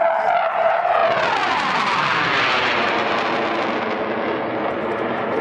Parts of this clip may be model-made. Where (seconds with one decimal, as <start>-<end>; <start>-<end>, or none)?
none